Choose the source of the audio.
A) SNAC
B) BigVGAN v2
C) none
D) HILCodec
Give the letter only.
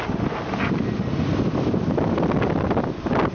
C